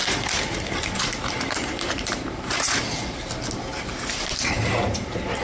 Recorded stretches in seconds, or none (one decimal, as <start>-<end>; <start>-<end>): 2.8-3.7